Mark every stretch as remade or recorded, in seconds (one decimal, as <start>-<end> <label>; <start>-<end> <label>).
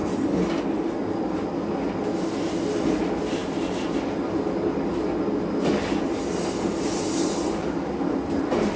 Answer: 0.0-8.8 recorded